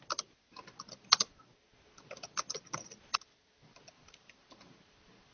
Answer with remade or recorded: recorded